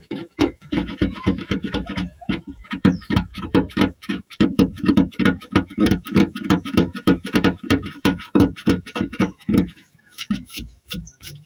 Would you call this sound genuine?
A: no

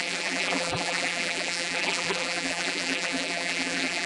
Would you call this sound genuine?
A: no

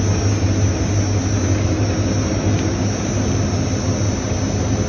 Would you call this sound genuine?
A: yes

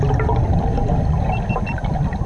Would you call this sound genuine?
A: yes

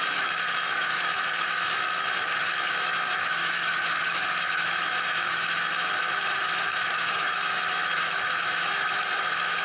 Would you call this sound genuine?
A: no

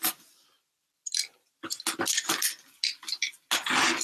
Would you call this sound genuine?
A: yes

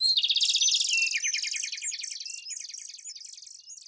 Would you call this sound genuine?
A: yes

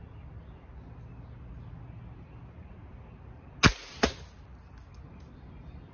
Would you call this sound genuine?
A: yes